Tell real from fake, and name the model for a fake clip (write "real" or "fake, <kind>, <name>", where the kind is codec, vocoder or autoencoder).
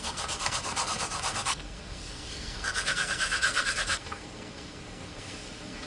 fake, codec, SNAC